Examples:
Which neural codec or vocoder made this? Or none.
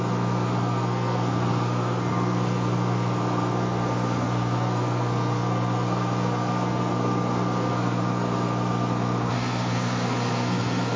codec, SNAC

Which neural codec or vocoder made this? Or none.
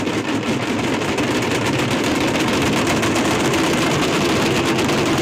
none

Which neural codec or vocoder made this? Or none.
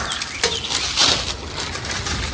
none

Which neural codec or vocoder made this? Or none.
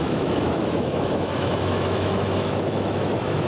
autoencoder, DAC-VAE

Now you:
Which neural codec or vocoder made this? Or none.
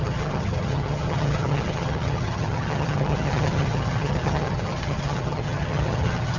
vocoder, HiFi-GAN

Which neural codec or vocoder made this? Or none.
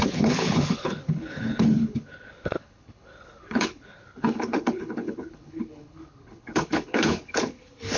codec, HILCodec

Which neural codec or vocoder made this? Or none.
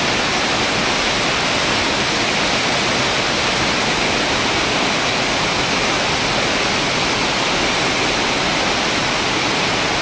none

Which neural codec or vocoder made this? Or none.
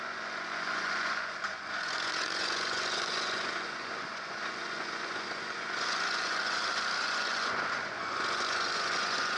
vocoder, Vocos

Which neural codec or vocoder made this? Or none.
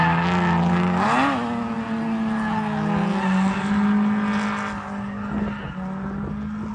none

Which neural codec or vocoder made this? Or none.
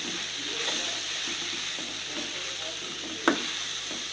none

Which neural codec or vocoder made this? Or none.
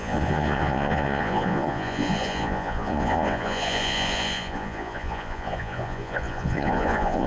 vocoder, Vocos